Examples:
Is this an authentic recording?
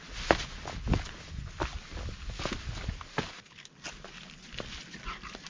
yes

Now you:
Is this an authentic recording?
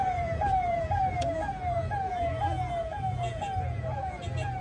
no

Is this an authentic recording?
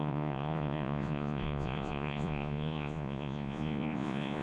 no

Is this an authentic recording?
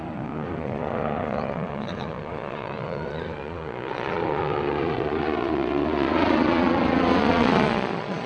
no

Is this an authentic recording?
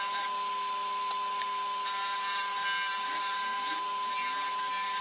yes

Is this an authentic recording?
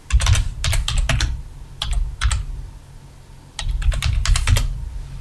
yes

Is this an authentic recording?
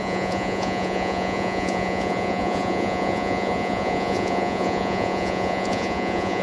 no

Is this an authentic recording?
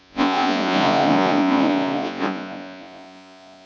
no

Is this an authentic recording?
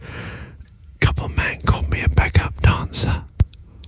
no